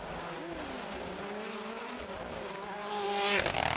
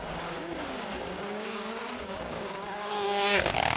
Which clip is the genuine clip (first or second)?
first